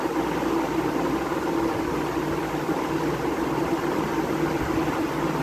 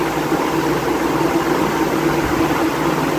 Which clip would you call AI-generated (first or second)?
first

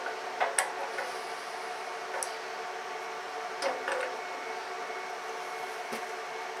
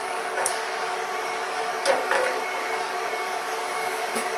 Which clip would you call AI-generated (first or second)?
second